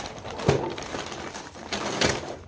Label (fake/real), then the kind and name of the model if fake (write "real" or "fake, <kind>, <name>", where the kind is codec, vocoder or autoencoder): fake, vocoder, BigVGAN v2